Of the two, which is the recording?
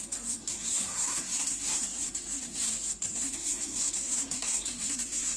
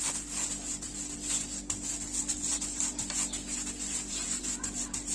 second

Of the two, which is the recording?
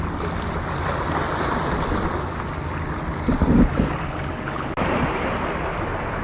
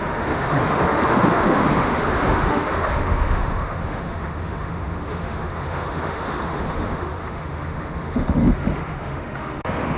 first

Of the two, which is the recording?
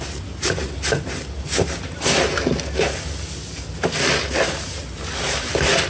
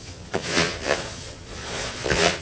first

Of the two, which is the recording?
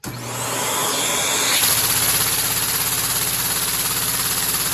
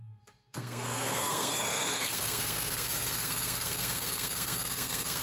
first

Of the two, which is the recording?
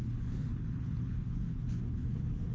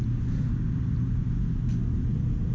second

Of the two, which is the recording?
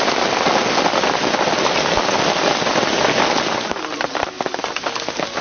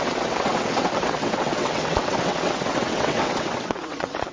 first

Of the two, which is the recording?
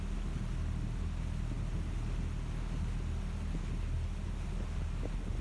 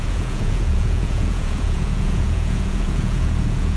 first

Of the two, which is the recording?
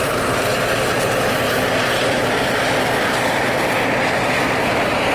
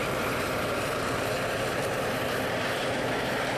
first